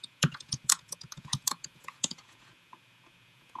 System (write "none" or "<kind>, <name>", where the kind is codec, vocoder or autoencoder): vocoder, Vocos